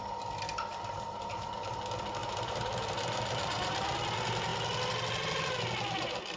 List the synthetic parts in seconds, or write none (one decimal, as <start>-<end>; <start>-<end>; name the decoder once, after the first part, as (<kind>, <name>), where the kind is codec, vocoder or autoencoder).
0.7-1.8 (vocoder, BigVGAN v2); 2.2-4.0